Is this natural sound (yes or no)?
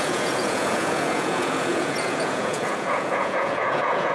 no